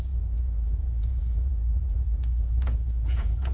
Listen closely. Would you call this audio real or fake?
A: fake